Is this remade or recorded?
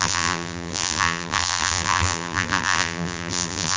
remade